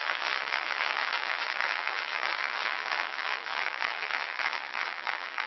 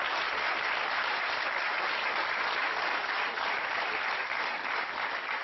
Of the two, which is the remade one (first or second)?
first